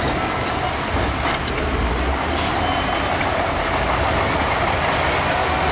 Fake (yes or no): no